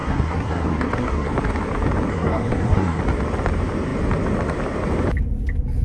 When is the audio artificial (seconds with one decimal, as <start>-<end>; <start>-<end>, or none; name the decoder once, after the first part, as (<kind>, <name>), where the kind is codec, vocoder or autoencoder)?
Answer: 0.0-1.3 (codec, SNAC); 2.1-3.0

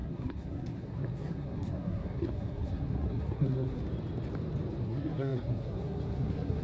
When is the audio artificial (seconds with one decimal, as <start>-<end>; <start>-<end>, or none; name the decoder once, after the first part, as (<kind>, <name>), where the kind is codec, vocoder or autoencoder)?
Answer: 0.0-3.8 (codec, SNAC); 4.8-6.6